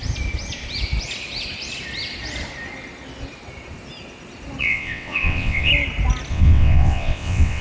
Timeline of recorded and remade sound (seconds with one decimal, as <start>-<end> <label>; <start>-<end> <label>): 0.0-4.6 recorded; 4.6-5.7 remade; 5.7-6.3 recorded; 6.3-7.6 remade